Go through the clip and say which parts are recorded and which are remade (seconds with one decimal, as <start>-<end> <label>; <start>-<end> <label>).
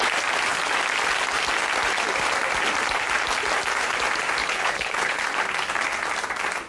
0.0-4.4 recorded; 4.4-5.2 remade; 5.2-6.7 recorded